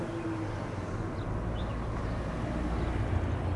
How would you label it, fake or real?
real